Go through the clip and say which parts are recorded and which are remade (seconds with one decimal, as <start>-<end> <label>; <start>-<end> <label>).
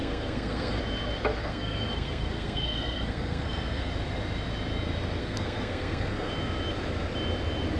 0.0-0.8 remade; 0.8-1.4 recorded; 1.4-3.9 remade; 3.9-5.2 recorded; 5.2-6.3 remade; 6.3-7.8 recorded